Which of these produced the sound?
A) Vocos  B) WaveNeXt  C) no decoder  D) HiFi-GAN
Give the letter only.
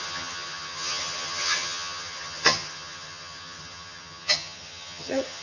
D